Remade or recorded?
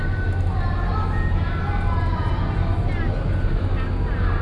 recorded